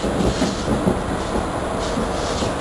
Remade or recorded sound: recorded